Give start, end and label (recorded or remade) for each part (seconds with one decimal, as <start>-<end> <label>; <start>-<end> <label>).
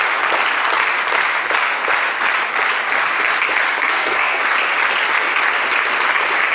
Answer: 0.0-3.8 recorded; 3.8-4.4 remade; 4.4-6.5 recorded